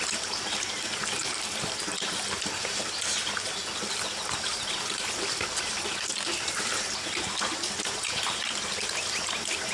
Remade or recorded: recorded